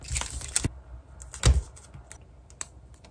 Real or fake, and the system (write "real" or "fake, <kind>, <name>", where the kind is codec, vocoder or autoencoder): real